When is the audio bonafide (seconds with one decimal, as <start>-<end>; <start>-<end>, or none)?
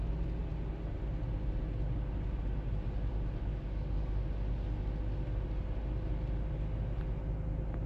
0.0-3.5; 4.3-7.9